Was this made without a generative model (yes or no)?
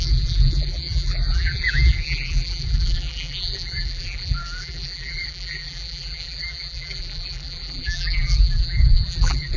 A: no